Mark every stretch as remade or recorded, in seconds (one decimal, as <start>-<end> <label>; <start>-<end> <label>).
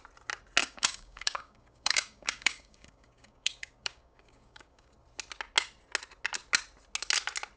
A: 0.0-0.6 recorded; 0.6-4.9 remade; 4.9-7.6 recorded